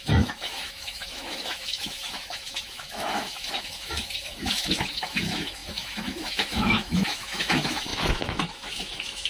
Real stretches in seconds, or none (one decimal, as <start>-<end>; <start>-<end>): none

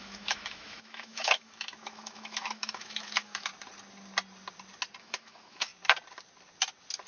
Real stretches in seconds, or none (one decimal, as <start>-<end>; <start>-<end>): 3.5-5.0; 5.7-7.1

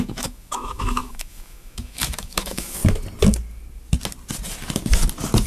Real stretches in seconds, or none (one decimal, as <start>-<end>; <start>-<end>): 2.8-5.5

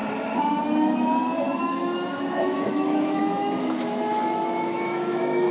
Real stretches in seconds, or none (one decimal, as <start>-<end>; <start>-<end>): 0.0-1.6

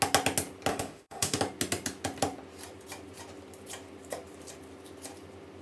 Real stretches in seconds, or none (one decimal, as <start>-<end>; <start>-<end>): 0.0-0.7; 1.4-5.6